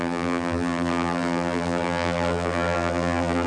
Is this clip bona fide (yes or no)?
no